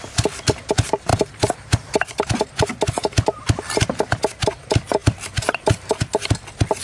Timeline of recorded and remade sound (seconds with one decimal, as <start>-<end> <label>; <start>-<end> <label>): 0.0-1.1 recorded; 1.1-2.7 remade; 2.7-5.0 recorded; 5.0-5.9 remade; 5.9-6.8 recorded